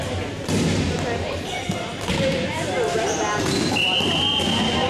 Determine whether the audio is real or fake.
real